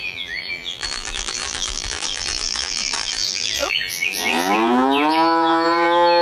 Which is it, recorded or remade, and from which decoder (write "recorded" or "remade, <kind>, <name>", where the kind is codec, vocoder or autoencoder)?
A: remade, vocoder, BigVGAN v2